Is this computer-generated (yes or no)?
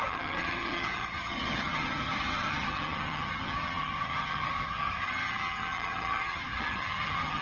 yes